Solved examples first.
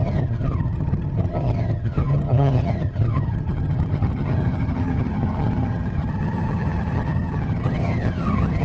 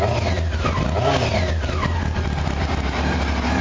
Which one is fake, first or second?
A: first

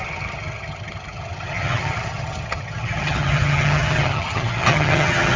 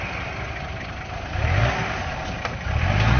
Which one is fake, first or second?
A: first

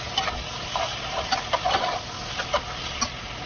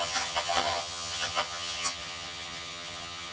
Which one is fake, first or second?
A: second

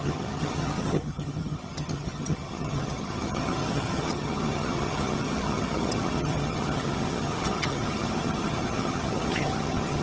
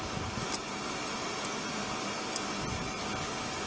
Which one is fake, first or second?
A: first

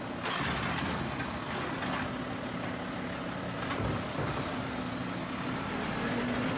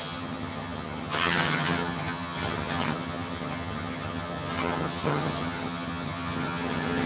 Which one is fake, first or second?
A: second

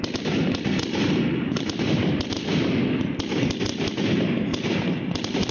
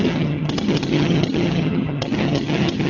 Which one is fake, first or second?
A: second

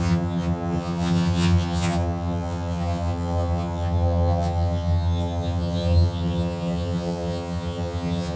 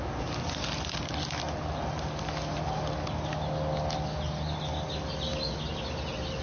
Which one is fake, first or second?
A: first